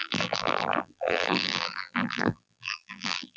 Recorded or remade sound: remade